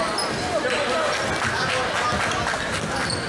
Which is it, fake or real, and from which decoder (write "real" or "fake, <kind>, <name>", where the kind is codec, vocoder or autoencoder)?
real